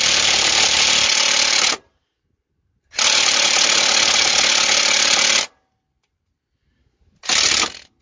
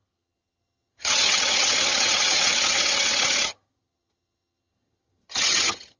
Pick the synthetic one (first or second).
second